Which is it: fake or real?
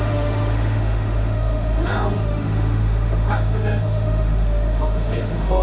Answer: fake